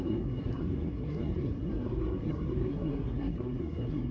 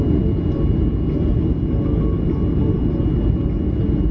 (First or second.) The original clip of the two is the second